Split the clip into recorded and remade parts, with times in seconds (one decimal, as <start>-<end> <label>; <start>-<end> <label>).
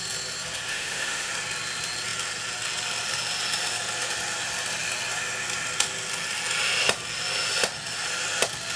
0.0-0.7 recorded; 0.7-1.3 remade; 1.3-8.8 recorded